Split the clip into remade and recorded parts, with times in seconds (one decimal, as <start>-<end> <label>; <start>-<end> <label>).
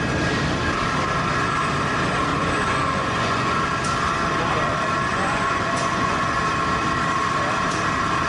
0.0-2.3 recorded; 2.3-3.6 remade; 3.6-5.1 recorded; 5.1-6.4 remade; 6.4-8.3 recorded